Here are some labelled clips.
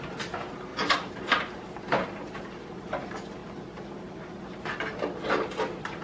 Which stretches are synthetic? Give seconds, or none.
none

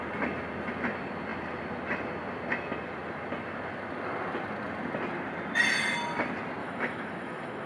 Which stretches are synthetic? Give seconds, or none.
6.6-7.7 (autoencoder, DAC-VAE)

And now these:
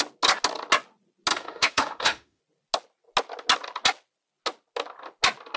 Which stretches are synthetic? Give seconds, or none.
1.3-2.4 (autoencoder, DAC-VAE)

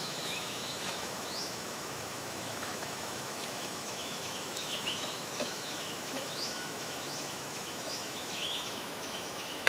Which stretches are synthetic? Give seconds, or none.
0.0-9.7 (autoencoder, DAC-VAE)

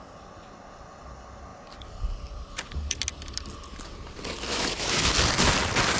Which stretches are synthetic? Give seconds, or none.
4.5-5.1 (autoencoder, DAC-VAE)

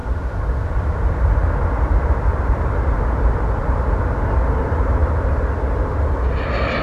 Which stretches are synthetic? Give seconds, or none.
none

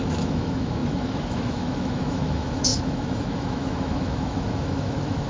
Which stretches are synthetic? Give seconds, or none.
0.0-5.3 (autoencoder, DAC-VAE)